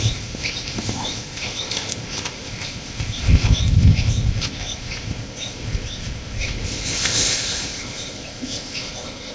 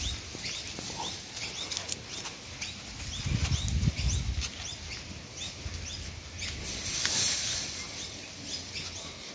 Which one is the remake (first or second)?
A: first